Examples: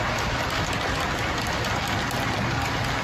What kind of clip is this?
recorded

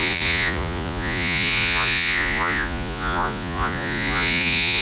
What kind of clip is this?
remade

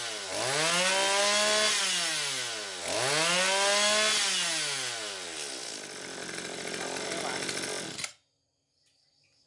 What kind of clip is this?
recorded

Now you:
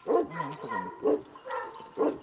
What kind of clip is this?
recorded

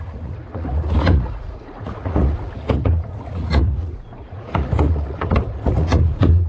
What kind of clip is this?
remade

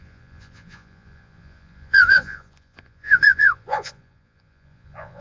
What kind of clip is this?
remade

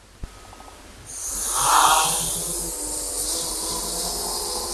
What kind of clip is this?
recorded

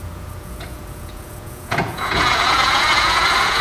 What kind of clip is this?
remade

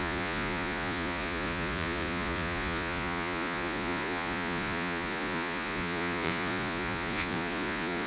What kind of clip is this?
remade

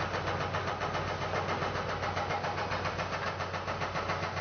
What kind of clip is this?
recorded